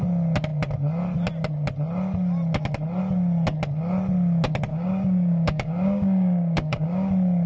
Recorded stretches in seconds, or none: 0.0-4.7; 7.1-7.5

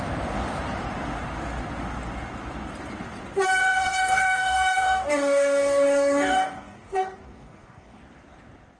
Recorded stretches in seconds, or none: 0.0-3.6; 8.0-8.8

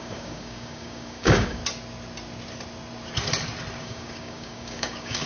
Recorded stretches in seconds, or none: 1.6-3.8

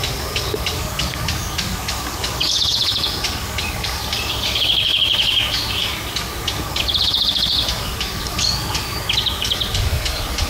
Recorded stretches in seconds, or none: 5.9-6.4

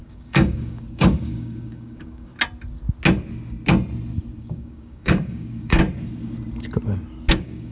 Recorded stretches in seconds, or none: 2.3-4.4; 5.8-7.3